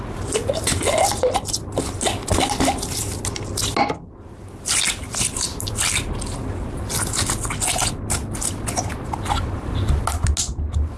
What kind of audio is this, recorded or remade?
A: recorded